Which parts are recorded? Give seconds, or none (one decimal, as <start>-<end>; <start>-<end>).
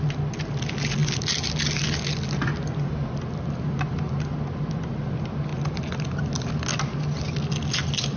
0.0-8.2